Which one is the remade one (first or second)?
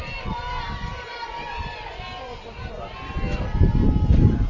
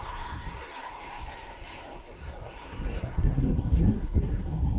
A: second